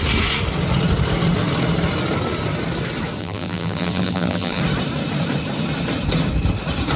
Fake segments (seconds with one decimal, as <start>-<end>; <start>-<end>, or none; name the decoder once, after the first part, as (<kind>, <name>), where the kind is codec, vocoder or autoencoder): 3.2-4.6 (vocoder, BigVGAN v2)